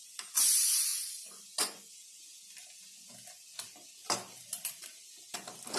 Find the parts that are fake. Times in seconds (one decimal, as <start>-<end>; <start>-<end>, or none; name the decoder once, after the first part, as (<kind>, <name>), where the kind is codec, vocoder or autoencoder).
0.9-2.2 (vocoder, Vocos)